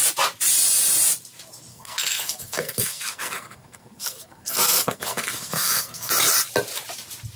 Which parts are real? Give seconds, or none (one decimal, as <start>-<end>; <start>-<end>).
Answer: 0.0-1.7; 6.1-7.4